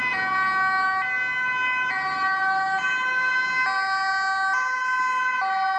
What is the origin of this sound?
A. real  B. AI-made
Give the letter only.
A